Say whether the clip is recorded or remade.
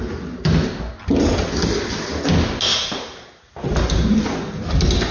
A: recorded